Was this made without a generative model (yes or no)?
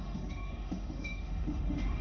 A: no